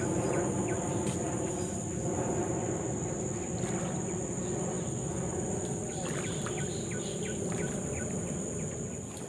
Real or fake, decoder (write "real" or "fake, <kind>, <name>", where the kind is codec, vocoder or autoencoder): real